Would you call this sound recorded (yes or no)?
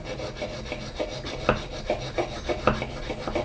yes